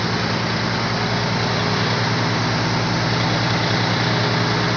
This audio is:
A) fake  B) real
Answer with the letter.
B